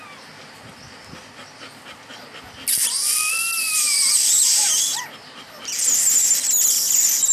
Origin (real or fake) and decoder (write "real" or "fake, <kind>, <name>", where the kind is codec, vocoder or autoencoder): real